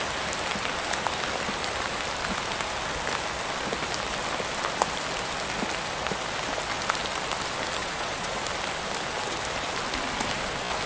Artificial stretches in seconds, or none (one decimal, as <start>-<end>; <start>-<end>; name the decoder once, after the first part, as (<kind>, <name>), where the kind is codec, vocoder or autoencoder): 7.8-8.4 (vocoder, Vocos)